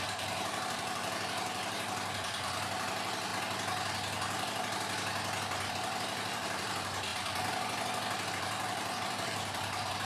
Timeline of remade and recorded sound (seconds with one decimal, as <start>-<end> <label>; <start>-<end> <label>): 0.0-3.3 remade; 3.3-5.7 recorded; 5.7-7.1 remade; 7.1-8.3 recorded; 8.3-10.0 remade

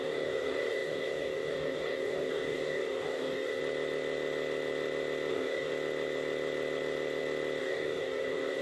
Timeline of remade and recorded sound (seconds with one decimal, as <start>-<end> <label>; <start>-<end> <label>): 0.0-3.6 remade; 3.6-5.3 recorded; 5.3-5.7 remade; 5.7-7.6 recorded; 7.6-8.6 remade

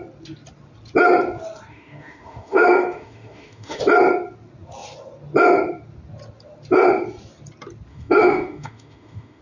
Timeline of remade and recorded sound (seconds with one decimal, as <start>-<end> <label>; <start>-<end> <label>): 0.0-1.7 recorded; 1.7-3.8 remade; 3.8-7.9 recorded; 7.9-9.4 remade

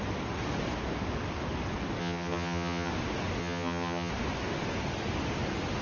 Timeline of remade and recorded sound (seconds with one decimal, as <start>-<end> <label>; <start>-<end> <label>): 0.0-2.0 recorded; 2.0-2.9 remade; 2.9-3.4 recorded; 3.4-4.1 remade; 4.1-5.8 recorded

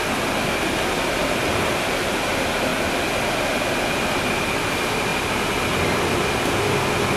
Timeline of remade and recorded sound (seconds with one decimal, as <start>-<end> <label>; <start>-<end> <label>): 0.0-7.2 recorded

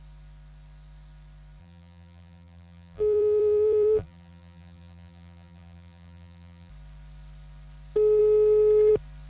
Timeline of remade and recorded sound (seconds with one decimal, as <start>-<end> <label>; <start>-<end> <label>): 0.0-1.6 recorded; 1.6-6.7 remade; 6.7-9.3 recorded

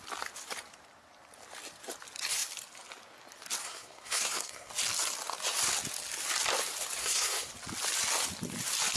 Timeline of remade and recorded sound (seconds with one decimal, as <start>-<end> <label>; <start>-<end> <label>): 0.0-3.6 recorded; 3.6-4.7 remade; 4.7-7.0 recorded; 7.0-7.5 remade; 7.5-9.0 recorded

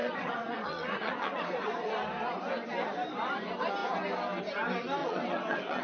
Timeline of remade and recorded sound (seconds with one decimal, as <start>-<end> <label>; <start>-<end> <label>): 0.0-1.9 remade; 1.9-5.0 recorded; 5.0-5.8 remade